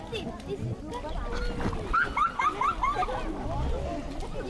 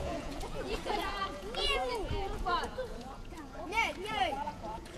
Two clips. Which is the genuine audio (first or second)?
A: first